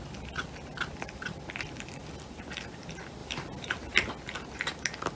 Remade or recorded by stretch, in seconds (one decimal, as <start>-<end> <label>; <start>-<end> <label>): 0.0-5.2 recorded